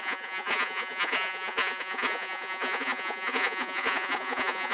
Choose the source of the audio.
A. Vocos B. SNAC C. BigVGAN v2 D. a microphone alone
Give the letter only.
A